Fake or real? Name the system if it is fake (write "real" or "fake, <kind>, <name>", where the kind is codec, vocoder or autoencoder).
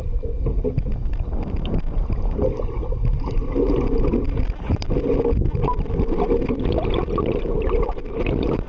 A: real